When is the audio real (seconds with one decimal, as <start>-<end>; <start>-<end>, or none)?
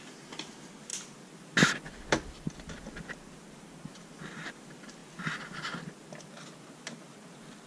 0.0-7.7